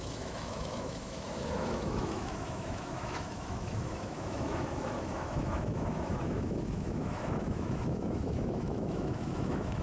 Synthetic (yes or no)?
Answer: yes